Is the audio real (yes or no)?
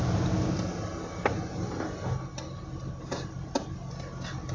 yes